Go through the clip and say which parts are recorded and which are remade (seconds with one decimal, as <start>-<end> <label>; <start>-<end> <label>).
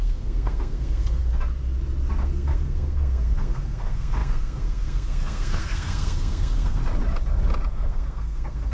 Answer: 0.0-1.2 remade; 1.2-2.2 recorded; 2.2-6.8 remade; 6.8-7.7 recorded; 7.7-8.7 remade